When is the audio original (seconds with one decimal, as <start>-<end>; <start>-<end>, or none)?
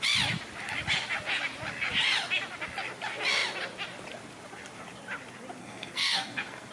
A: 0.0-5.6